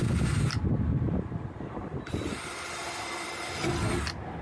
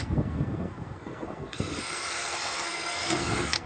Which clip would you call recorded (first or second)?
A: first